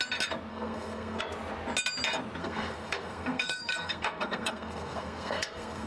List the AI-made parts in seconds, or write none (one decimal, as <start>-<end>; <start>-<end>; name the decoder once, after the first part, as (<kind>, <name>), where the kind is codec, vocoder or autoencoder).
0.5-1.2 (codec, SNAC); 2.4-5.9